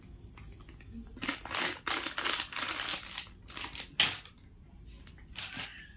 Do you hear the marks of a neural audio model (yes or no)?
no